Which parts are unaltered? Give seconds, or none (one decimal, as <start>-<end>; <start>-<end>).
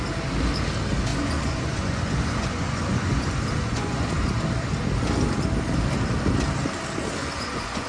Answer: 0.0-1.1; 4.3-7.2